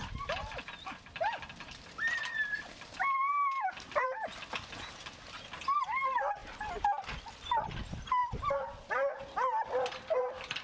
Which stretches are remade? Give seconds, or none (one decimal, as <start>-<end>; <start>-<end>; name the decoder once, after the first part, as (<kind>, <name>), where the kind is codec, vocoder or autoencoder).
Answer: none